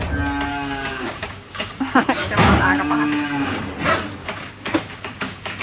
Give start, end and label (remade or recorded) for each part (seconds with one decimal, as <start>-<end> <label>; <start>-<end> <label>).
0.0-0.5 recorded; 0.5-3.6 remade; 3.6-4.2 recorded; 4.2-5.6 remade